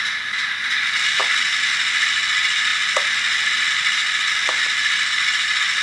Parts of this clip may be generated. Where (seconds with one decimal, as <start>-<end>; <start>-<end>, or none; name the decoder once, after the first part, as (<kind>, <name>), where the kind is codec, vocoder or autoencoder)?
none